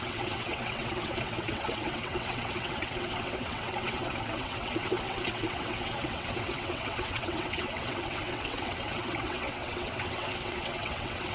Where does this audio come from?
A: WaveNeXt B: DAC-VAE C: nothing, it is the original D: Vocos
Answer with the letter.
A